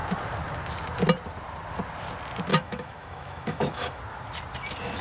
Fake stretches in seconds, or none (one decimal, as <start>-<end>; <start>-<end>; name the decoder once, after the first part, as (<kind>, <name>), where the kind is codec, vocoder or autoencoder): 2.5-4.0 (autoencoder, DAC-VAE)